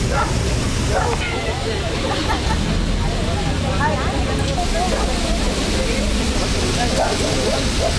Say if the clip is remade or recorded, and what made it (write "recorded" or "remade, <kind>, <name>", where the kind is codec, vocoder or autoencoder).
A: recorded